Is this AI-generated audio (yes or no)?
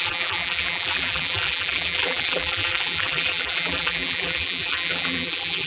yes